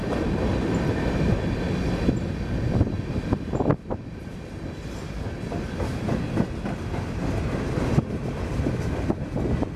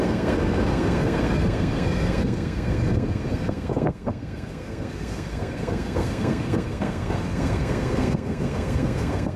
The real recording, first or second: first